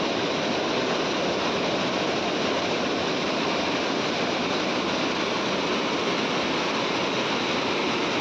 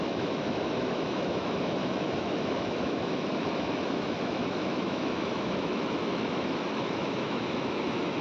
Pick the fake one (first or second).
second